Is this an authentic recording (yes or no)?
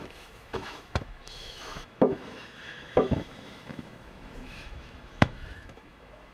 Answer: no